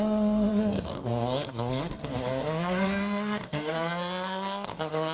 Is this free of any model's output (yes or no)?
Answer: no